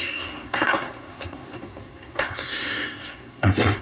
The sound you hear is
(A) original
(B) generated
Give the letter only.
B